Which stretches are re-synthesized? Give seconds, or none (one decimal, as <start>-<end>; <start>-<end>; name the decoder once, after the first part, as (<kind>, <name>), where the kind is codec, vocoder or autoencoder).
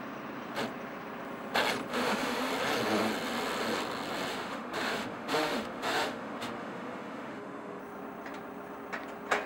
1.9-2.5 (autoencoder, DAC-VAE); 4.3-7.8